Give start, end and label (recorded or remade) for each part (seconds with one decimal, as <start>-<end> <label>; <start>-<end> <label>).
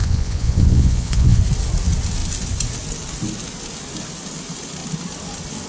0.0-1.4 remade; 1.4-5.7 recorded